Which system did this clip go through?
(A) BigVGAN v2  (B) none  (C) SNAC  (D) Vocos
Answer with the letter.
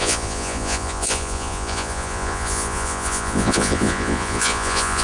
D